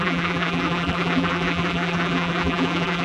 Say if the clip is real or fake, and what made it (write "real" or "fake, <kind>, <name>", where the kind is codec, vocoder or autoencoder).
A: fake, vocoder, BigVGAN v2